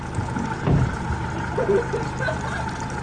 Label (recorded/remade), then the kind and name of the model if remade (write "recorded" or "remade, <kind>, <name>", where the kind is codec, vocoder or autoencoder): recorded